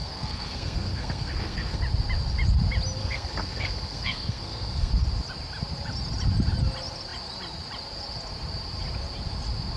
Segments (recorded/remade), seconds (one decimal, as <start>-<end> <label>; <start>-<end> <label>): 0.0-1.8 remade; 1.8-3.0 recorded; 3.0-4.9 remade; 4.9-9.8 recorded